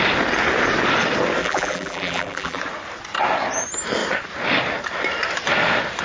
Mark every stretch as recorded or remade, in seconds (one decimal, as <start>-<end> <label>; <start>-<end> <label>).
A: 0.0-1.4 recorded; 1.4-2.6 remade; 2.6-6.0 recorded